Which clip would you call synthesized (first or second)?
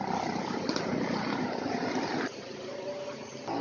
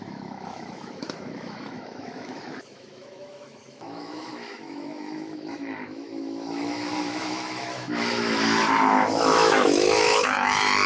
second